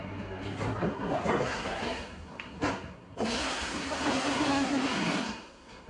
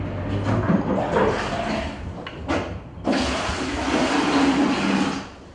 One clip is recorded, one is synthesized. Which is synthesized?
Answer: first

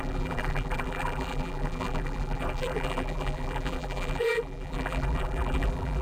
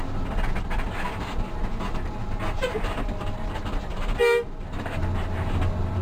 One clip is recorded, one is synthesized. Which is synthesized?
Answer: first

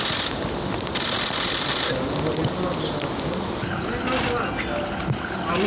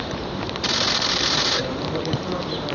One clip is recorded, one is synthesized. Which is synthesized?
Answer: second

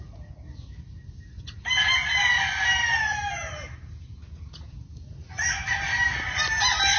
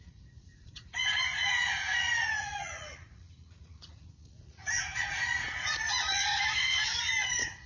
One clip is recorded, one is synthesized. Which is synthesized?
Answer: second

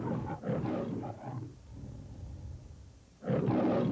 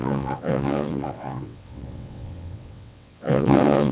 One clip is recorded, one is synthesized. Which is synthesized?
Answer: second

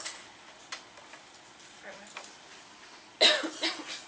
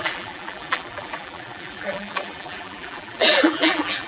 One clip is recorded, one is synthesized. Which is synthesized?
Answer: second